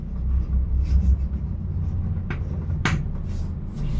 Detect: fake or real real